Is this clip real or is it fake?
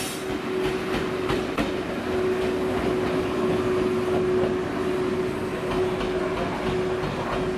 real